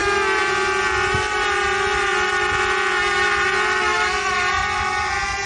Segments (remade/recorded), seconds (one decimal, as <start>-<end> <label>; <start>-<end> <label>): 0.0-5.5 recorded